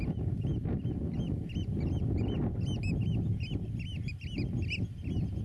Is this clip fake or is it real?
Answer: real